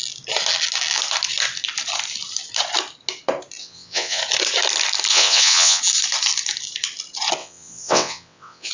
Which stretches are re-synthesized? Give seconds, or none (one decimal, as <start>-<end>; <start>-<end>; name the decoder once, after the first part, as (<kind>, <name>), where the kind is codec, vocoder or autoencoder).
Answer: 3.6-4.2 (vocoder, WaveNeXt); 5.1-5.8; 7.4-8.7